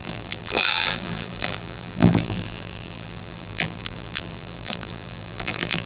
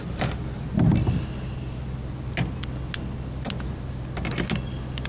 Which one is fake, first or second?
first